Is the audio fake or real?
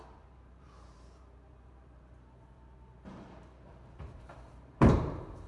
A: fake